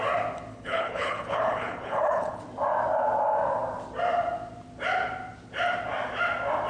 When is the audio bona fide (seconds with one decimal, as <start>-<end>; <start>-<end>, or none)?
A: 0.0-0.5; 2.4-6.7